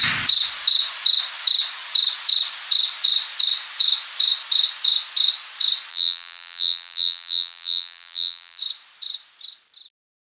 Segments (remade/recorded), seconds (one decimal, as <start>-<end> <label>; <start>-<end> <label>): 0.0-5.9 recorded; 5.9-8.6 remade; 8.6-10.3 recorded